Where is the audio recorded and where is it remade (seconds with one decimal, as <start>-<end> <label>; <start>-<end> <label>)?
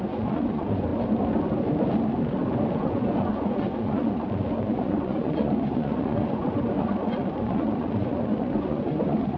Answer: 0.0-0.9 remade; 0.9-2.8 recorded; 2.8-9.4 remade